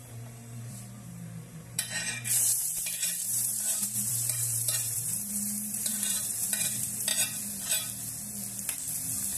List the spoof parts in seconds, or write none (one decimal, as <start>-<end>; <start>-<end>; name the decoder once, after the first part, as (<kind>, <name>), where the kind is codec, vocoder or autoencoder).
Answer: 0.0-7.1 (vocoder, BigVGAN v2)